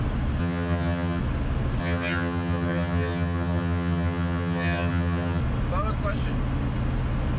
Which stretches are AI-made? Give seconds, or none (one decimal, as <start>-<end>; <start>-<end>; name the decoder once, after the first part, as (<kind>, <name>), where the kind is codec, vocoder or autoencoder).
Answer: 0.4-1.2 (vocoder, HiFi-GAN); 1.8-5.4